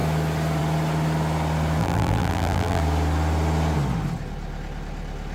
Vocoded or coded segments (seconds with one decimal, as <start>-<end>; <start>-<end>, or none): 1.8-2.8